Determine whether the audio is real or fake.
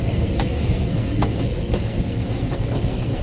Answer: fake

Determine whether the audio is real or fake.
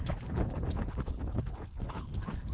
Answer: fake